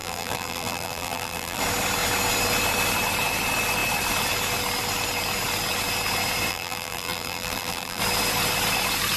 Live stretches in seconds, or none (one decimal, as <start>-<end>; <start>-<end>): 1.6-6.5; 8.0-9.2

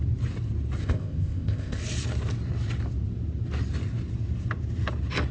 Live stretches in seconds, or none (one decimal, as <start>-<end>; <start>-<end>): 0.0-0.8; 1.8-5.3

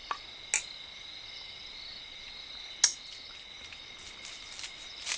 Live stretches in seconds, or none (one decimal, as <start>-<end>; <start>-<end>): 0.0-5.2

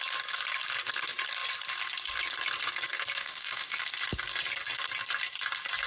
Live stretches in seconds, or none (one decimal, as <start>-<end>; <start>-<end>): 0.0-3.2; 3.8-5.9

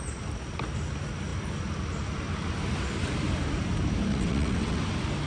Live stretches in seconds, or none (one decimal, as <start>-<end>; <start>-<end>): 0.0-4.1; 4.8-5.3